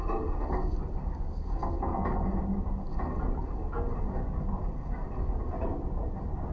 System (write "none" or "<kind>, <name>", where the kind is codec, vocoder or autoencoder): none